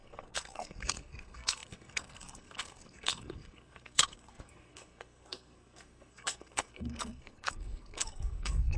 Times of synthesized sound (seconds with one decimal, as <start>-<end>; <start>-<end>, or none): 0.0-8.8